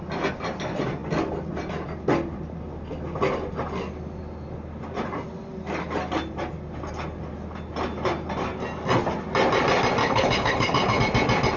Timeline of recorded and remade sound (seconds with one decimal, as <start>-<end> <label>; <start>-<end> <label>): 0.0-10.0 recorded; 10.0-11.0 remade; 11.0-11.6 recorded